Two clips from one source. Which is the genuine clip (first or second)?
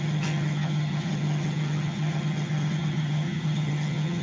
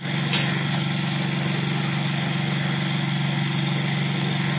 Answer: second